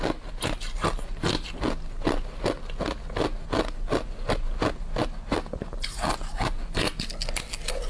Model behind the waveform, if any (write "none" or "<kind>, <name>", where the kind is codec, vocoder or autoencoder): none